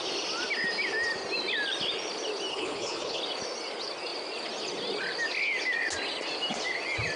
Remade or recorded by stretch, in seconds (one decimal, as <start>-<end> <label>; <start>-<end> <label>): 0.0-2.5 recorded; 2.5-3.2 remade; 3.2-7.2 recorded